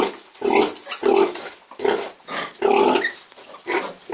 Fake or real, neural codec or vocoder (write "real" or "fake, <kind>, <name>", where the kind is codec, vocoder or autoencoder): real